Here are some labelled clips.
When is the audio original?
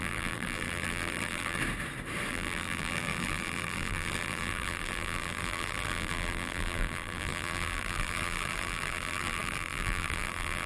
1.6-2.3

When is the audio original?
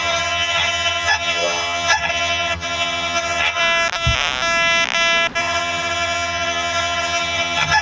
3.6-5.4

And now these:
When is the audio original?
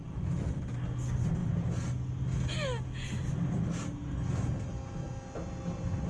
0.0-6.1